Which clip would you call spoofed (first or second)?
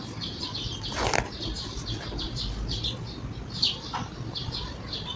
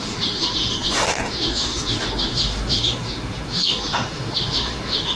second